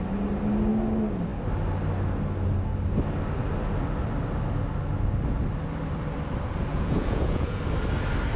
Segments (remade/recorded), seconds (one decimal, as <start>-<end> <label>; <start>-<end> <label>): 0.0-6.7 recorded; 6.7-7.6 remade; 7.6-8.4 recorded